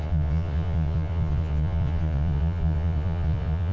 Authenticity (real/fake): fake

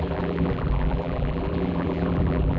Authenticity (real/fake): fake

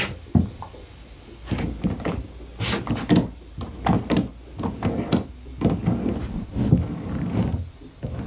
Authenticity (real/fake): real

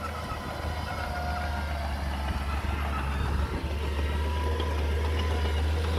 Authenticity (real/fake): real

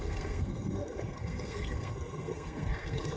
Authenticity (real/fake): fake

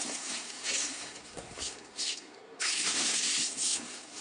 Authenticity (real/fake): fake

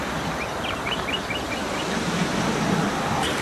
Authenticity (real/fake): fake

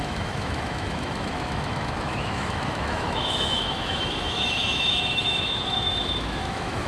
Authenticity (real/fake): fake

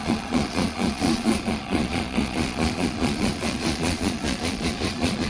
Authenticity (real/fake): fake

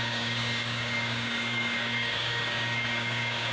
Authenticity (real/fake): fake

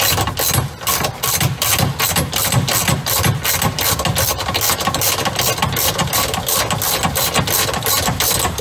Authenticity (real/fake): real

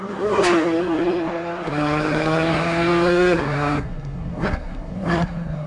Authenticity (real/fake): fake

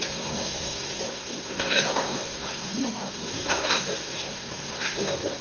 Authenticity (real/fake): fake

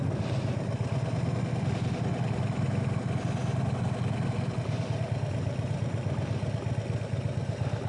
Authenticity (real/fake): real